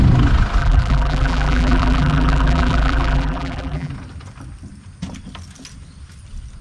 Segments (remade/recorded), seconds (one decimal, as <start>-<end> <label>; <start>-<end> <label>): 0.0-0.6 recorded; 0.6-3.9 remade; 3.9-6.6 recorded

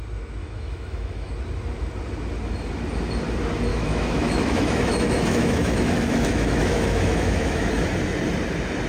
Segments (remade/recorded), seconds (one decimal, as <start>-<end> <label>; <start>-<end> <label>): 0.0-0.4 recorded; 0.4-1.3 remade; 1.3-3.7 recorded; 3.7-7.7 remade; 7.7-8.9 recorded

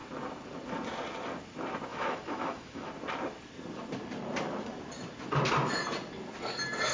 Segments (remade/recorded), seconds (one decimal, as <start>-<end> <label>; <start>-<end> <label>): 0.0-1.9 recorded; 1.9-2.9 remade; 2.9-6.9 recorded

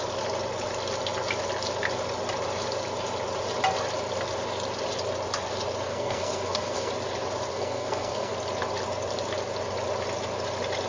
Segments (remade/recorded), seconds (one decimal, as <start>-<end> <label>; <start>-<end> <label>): 0.0-5.9 recorded; 5.9-6.9 remade; 6.9-7.5 recorded; 7.5-8.3 remade; 8.3-10.9 recorded

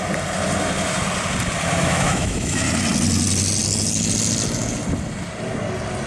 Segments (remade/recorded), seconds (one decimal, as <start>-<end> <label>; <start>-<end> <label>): 0.0-1.8 recorded; 1.8-2.6 remade; 2.6-6.1 recorded